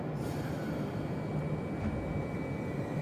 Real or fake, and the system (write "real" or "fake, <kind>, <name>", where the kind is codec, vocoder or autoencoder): real